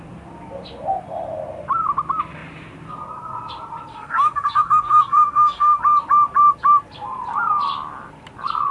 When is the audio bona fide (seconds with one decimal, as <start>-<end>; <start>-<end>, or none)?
0.0-3.9; 5.8-8.7